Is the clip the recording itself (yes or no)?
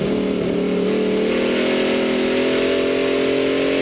yes